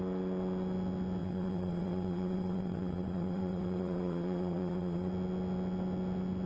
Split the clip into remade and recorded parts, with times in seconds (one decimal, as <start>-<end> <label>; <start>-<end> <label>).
0.0-1.2 recorded; 1.2-5.1 remade; 5.1-6.5 recorded